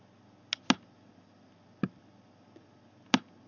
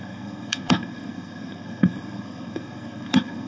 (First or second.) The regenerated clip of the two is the second